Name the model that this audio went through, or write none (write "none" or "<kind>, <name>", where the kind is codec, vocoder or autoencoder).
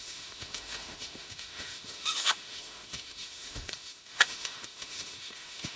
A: autoencoder, DAC-VAE